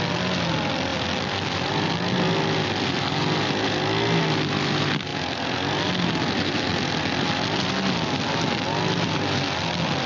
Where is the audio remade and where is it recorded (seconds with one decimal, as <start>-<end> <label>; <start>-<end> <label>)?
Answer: 0.0-10.1 recorded